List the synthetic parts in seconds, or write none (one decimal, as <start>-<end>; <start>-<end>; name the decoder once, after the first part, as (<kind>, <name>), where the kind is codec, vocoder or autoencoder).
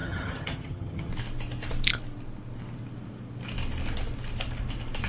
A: 0.0-1.1 (vocoder, HiFi-GAN)